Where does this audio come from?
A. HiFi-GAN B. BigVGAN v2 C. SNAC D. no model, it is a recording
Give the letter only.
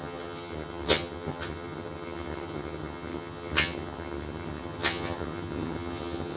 A